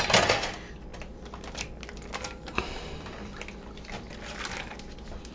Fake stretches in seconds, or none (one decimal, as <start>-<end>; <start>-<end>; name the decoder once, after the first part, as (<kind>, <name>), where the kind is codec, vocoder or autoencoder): none